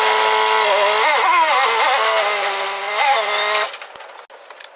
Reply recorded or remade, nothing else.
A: recorded